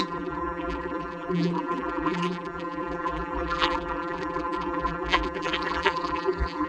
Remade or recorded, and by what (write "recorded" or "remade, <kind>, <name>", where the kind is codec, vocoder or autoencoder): remade, vocoder, BigVGAN v2